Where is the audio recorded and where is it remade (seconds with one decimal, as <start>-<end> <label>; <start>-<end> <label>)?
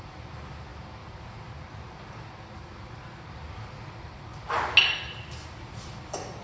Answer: 0.0-6.4 recorded